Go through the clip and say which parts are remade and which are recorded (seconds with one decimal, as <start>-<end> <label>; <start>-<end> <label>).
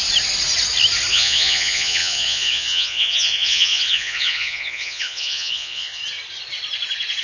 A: 0.0-1.1 recorded; 1.1-6.0 remade; 6.0-7.2 recorded